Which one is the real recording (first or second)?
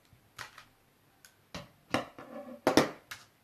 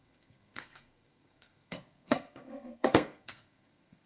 first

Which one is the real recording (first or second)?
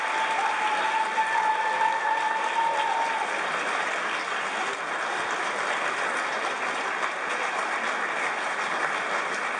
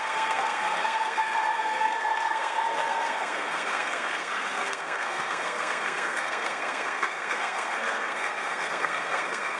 first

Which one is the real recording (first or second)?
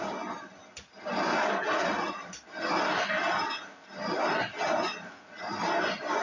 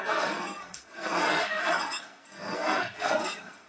first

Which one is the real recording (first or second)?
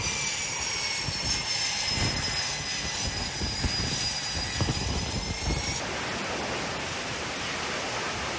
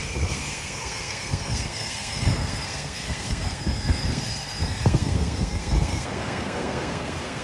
first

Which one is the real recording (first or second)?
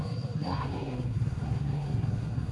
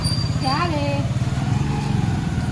second